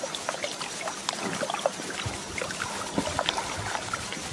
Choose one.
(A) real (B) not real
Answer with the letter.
A